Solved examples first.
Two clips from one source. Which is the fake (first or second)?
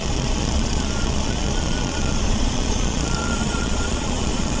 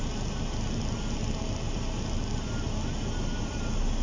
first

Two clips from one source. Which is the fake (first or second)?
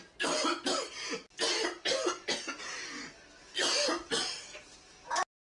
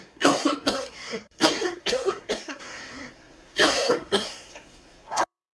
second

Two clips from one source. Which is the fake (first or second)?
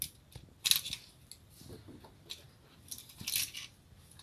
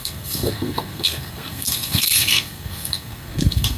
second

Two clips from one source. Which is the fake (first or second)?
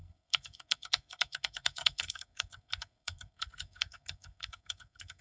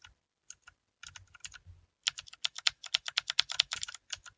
first